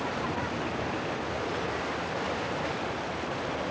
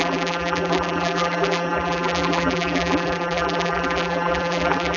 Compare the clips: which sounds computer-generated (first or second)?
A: second